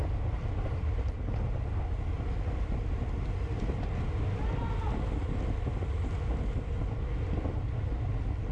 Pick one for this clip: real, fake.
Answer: real